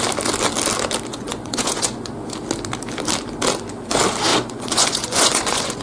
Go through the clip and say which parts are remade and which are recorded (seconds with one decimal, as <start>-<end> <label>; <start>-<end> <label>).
0.0-1.1 recorded; 1.1-2.1 remade; 2.1-4.3 recorded; 4.3-5.8 remade